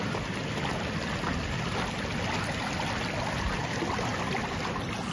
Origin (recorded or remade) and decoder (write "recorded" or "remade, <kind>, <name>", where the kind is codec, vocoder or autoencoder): recorded